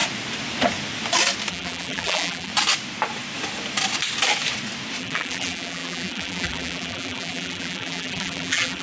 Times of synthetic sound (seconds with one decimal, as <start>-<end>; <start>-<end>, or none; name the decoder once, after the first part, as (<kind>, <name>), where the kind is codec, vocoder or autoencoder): 1.5-2.5 (vocoder, BigVGAN v2); 5.0-8.8